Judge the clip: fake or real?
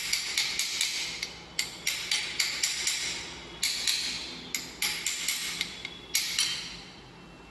real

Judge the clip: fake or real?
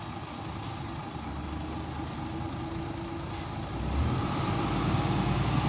real